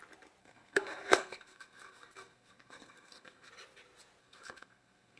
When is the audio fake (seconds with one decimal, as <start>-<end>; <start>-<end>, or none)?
0.4-3.5; 4.2-5.2